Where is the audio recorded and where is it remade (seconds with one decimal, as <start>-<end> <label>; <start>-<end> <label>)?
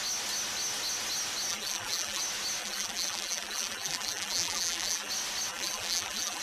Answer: 0.0-1.5 recorded; 1.5-2.2 remade; 2.2-2.6 recorded; 2.6-5.1 remade; 5.1-5.5 recorded; 5.5-6.4 remade